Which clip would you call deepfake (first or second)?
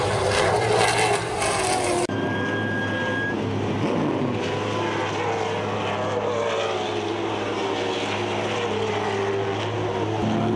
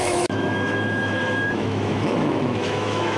second